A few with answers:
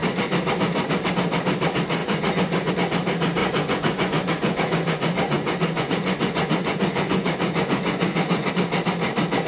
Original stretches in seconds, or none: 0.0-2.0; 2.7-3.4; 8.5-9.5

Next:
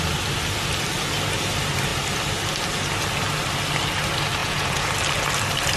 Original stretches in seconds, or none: 0.0-4.4; 4.9-5.8

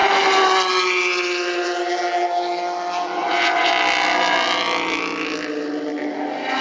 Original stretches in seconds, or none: 0.0-3.2; 3.7-6.6

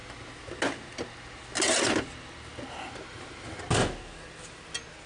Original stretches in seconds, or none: 0.0-5.1